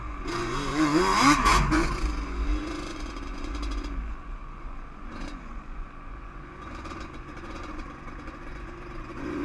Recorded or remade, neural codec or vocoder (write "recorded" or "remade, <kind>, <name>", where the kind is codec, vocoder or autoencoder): remade, vocoder, Vocos